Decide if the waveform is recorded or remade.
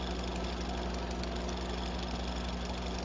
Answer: recorded